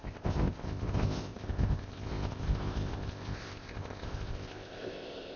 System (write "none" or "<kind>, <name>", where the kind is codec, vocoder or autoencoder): codec, ZipCodec